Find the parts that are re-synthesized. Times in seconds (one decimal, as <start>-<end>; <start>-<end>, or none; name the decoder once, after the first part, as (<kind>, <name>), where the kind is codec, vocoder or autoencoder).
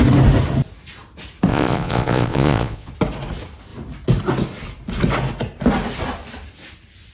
1.5-2.9 (vocoder, Vocos)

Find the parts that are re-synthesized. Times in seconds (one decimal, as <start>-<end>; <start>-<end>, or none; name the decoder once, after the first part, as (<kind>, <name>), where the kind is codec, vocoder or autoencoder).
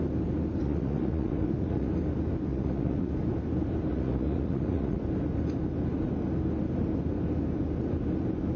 0.6-1.9 (vocoder, Vocos); 2.5-3.1; 3.9-5.0